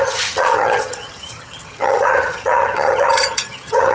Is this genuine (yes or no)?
no